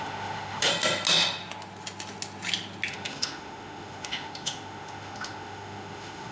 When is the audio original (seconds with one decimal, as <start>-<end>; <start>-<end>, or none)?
0.7-2.9